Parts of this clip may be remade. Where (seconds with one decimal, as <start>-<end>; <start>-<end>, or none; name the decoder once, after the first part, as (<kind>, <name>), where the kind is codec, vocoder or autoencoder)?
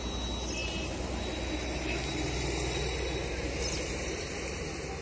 none